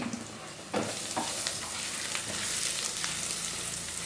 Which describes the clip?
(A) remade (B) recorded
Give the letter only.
B